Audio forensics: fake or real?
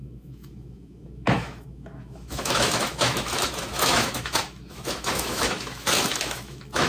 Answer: fake